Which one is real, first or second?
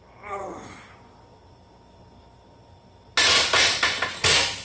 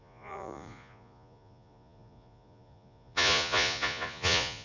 first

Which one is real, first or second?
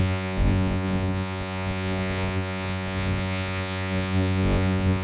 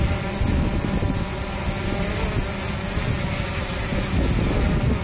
second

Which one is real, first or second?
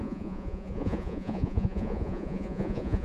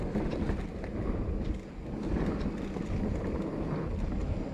second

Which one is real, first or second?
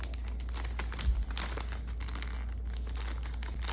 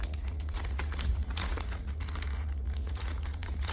first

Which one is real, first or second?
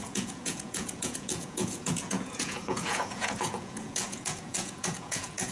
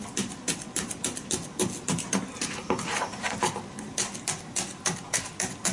second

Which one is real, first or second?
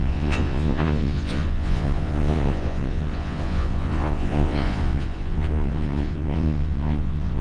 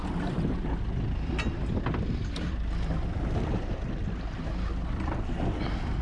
second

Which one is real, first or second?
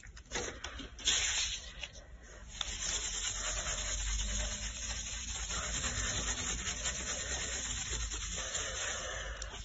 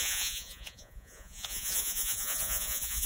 first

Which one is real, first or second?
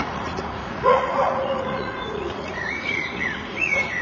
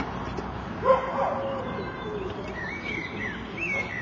second